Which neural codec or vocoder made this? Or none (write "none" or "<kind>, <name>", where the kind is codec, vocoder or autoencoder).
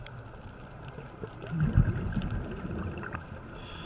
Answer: none